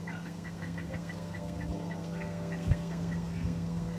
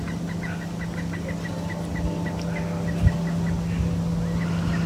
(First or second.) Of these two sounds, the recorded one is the second